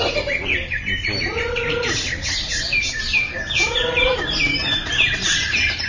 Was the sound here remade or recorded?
remade